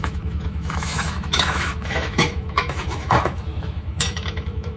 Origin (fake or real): fake